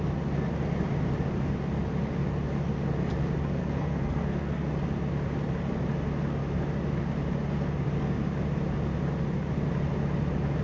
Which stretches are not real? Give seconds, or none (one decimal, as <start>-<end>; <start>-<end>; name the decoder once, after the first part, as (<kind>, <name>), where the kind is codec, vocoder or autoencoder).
3.6-4.7 (codec, SNAC)